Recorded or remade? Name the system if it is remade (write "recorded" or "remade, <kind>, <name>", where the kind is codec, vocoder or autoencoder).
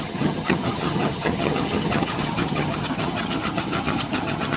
remade, vocoder, HiFi-GAN